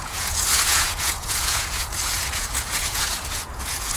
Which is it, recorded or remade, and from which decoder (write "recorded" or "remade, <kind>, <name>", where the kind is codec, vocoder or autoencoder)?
remade, vocoder, Vocos